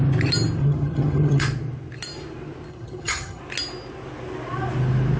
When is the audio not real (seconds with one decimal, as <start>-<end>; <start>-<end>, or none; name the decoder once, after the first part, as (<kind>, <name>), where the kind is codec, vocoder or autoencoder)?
0.6-1.4 (vocoder, HiFi-GAN); 2.7-3.4